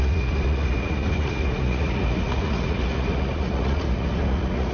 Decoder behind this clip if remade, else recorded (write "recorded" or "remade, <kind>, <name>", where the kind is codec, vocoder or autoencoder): remade, vocoder, Vocos